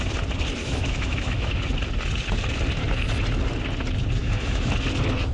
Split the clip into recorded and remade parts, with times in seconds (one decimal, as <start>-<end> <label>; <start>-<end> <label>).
0.0-0.6 recorded; 0.6-1.6 remade; 1.6-4.2 recorded; 4.2-4.7 remade; 4.7-5.3 recorded